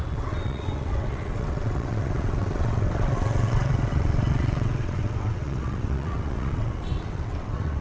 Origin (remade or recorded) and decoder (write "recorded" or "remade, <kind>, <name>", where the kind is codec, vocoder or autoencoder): remade, vocoder, WaveNeXt